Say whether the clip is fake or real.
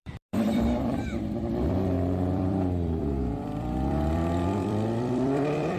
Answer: fake